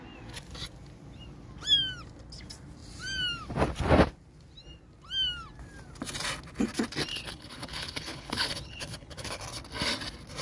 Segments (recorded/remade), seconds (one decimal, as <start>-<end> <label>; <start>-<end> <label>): 0.0-7.1 recorded; 7.1-9.4 remade; 9.4-10.4 recorded